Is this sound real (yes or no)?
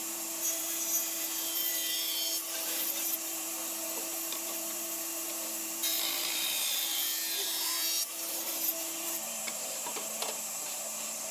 no